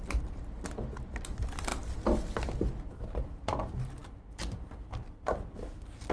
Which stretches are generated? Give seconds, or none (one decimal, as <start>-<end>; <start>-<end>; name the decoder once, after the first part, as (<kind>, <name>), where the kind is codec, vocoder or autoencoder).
none

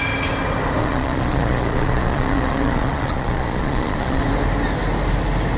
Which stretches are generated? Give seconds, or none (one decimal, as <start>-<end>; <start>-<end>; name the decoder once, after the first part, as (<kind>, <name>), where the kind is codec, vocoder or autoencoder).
0.8-4.2 (vocoder, Vocos)

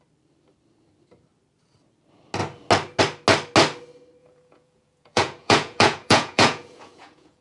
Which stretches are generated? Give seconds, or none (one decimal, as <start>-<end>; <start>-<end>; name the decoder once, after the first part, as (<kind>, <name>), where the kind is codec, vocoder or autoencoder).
4.2-7.4 (vocoder, Vocos)

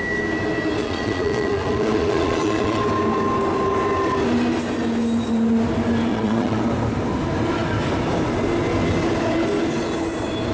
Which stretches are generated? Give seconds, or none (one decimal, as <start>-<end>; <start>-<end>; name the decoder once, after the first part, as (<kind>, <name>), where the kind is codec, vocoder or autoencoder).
0.8-2.8 (vocoder, Vocos); 6.1-6.6

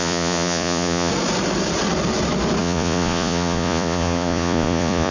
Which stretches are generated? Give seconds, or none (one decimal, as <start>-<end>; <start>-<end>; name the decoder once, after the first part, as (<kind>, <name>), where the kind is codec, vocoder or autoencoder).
0.0-1.1 (vocoder, Vocos); 2.6-5.1